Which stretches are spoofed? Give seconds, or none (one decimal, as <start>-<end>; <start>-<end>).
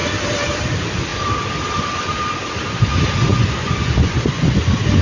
3.3-4.5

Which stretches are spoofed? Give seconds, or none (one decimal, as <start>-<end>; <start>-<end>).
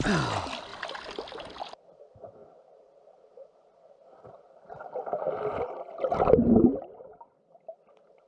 2.4-7.4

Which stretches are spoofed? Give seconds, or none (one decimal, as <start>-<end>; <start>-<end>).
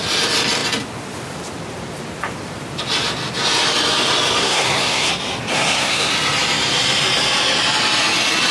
4.4-5.1; 5.5-6.1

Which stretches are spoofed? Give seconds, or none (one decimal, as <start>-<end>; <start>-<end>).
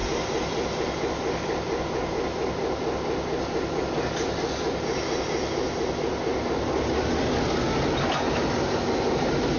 none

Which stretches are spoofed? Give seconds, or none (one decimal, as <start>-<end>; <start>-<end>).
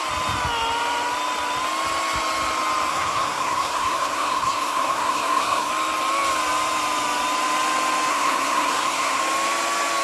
2.9-5.7; 8.1-9.2